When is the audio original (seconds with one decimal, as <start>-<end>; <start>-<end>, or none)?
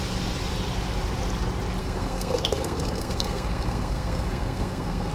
0.0-1.8